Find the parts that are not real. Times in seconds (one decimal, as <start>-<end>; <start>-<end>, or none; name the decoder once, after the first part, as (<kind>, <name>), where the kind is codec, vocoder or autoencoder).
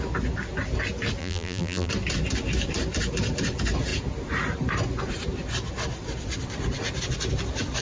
1.2-1.9 (vocoder, BigVGAN v2)